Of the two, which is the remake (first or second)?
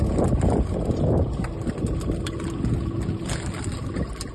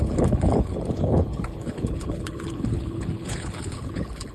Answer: second